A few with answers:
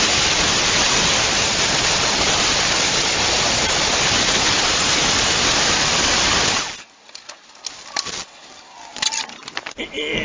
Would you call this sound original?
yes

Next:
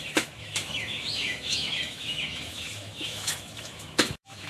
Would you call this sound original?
no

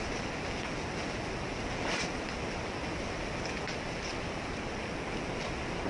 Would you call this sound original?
yes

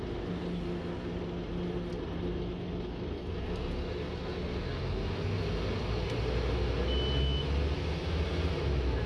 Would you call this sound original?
yes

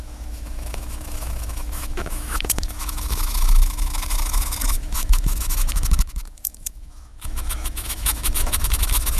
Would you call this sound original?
no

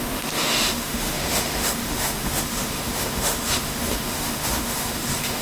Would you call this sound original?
no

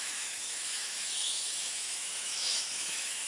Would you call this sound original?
no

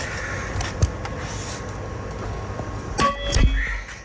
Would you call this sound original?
yes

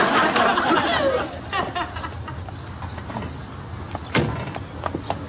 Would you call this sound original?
yes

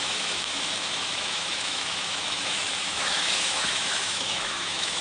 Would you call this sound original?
no